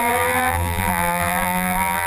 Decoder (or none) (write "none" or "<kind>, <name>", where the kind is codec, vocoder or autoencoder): vocoder, BigVGAN v2